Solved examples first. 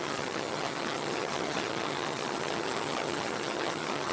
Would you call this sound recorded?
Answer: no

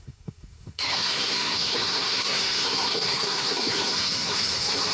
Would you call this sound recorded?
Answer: no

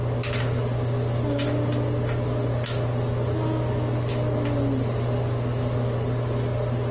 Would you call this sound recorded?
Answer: yes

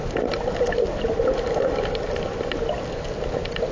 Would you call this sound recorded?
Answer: yes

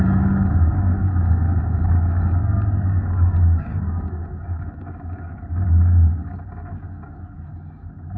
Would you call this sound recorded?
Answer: no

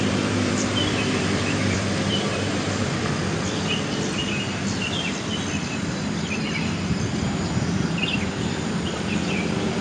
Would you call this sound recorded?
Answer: no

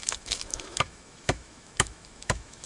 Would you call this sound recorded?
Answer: no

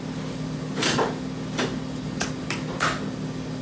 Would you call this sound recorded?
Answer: yes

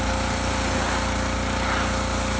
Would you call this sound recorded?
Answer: yes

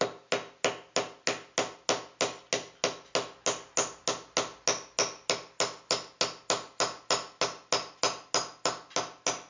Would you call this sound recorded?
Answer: yes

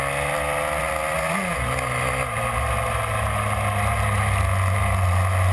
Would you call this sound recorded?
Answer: yes